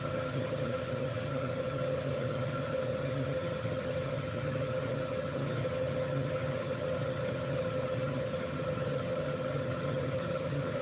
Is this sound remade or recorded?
remade